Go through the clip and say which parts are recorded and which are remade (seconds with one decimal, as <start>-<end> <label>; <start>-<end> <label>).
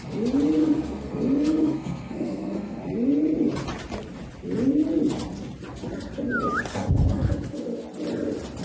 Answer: 0.0-0.6 recorded; 0.6-2.8 remade; 2.8-6.7 recorded; 6.7-7.3 remade; 7.3-8.6 recorded